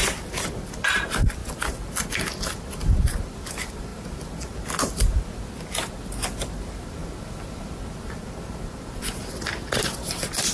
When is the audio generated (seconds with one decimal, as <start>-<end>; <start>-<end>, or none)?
none